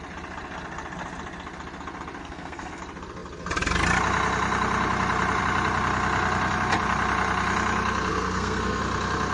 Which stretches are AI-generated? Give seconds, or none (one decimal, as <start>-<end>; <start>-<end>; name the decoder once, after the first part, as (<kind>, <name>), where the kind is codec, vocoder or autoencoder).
2.2-2.8 (codec, SNAC); 8.1-8.8